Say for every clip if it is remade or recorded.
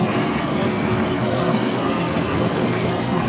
remade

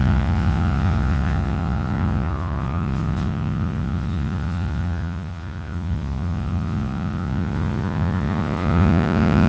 remade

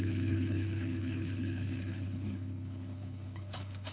remade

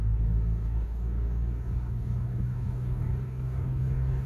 remade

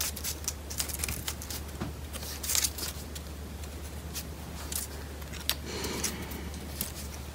recorded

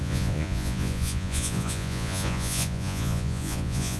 remade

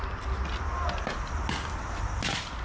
recorded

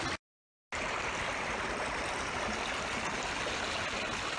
recorded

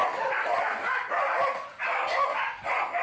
recorded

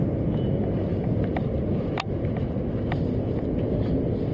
recorded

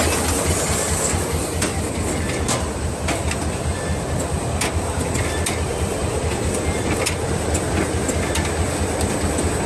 recorded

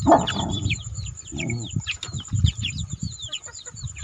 remade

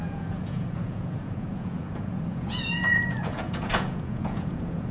remade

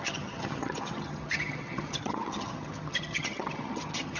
remade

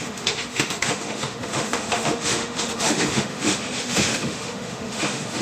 remade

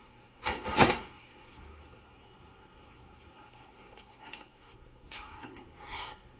remade